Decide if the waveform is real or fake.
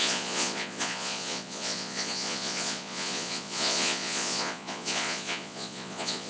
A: fake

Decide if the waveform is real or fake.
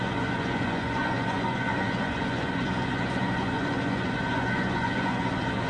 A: fake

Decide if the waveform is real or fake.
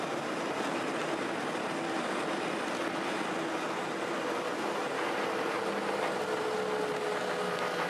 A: real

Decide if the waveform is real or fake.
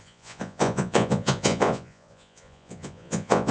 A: fake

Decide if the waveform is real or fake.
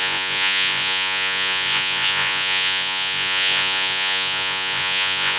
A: fake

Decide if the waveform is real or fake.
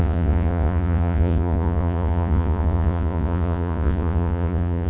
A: fake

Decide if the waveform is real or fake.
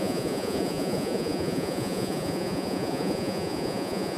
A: fake